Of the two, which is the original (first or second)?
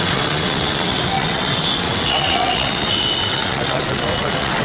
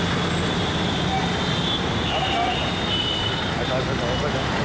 second